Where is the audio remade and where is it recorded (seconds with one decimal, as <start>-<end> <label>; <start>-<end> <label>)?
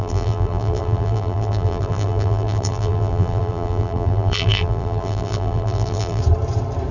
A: 0.0-6.2 remade; 6.2-6.9 recorded